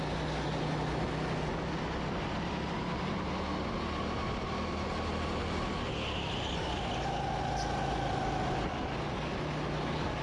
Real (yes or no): yes